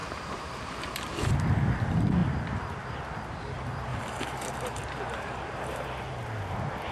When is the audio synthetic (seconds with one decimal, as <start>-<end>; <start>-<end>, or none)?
0.0-1.2; 2.2-3.4; 3.9-6.1